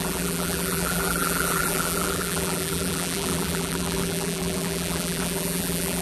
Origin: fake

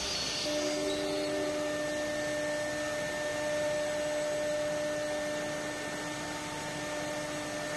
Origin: real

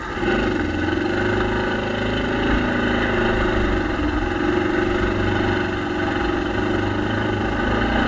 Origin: real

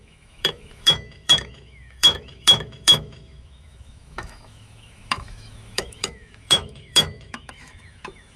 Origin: fake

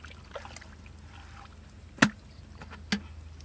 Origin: real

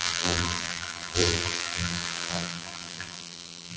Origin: fake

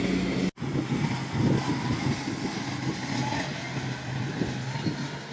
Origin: real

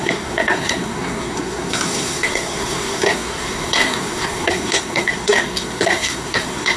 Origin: fake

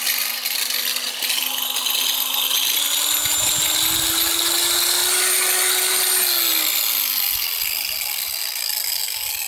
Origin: real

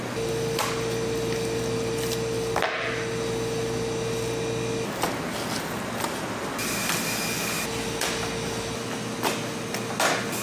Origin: real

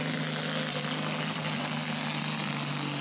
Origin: real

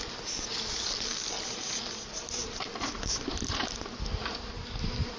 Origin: real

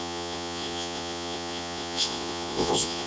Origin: fake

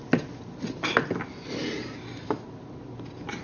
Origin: real